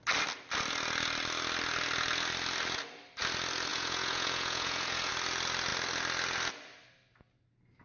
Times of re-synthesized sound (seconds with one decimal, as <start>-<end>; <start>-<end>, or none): 3.7-5.1